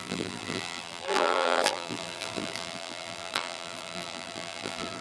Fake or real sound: fake